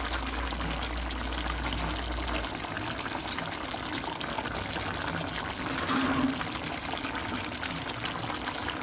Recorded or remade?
recorded